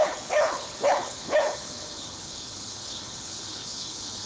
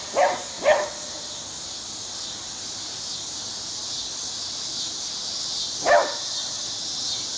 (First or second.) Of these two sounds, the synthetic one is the first